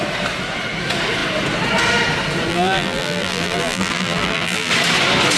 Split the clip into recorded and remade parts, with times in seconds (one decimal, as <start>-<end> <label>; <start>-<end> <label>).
0.0-2.5 recorded; 2.5-4.7 remade; 4.7-5.4 recorded